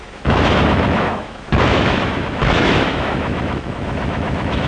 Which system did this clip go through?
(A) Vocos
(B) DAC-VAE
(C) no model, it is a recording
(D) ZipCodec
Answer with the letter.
B